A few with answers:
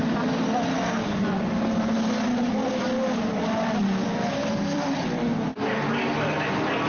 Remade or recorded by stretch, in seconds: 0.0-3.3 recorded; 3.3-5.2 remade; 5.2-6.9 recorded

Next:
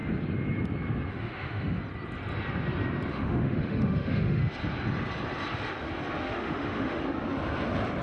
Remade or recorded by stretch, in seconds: 0.0-1.1 recorded; 1.1-1.8 remade; 1.8-3.1 recorded; 3.1-4.4 remade; 4.4-6.2 recorded; 6.2-7.0 remade; 7.0-8.0 recorded

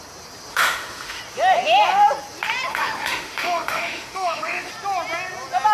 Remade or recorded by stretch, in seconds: 0.0-0.5 recorded; 0.5-1.2 remade; 1.2-2.7 recorded; 2.7-4.7 remade; 4.7-5.7 recorded